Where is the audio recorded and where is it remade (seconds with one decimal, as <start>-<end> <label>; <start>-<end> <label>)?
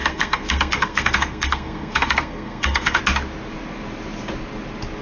0.0-3.0 remade; 3.0-5.0 recorded